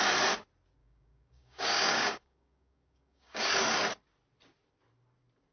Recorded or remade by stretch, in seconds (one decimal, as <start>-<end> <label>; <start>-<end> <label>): 0.0-0.8 recorded; 0.8-3.5 remade; 3.5-5.5 recorded